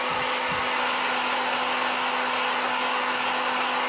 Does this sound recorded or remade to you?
recorded